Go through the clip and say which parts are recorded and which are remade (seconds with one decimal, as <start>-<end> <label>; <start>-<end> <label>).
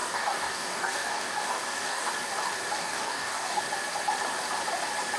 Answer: 0.0-2.1 remade; 2.1-2.8 recorded; 2.8-3.6 remade; 3.6-5.2 recorded